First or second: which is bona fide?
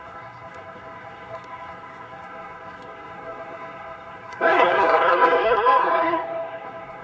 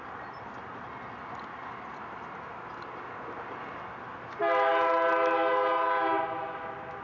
second